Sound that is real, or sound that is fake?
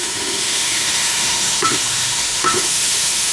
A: fake